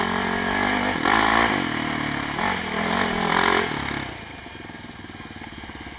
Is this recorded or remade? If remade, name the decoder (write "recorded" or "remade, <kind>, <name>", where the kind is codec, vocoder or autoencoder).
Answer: recorded